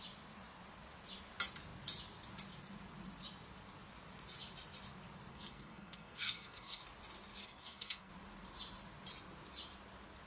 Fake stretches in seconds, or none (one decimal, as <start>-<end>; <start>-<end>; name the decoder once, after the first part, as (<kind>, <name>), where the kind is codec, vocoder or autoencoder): 5.3-6.8 (codec, SNAC); 7.4-8.1